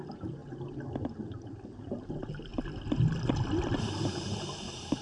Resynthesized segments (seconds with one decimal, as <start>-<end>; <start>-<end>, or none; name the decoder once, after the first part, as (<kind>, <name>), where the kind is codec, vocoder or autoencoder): 0.0-0.4 (vocoder, BigVGAN v2); 1.5-2.5; 3.8-5.0